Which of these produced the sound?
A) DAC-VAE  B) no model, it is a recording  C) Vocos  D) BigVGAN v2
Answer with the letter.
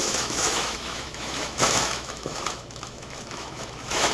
A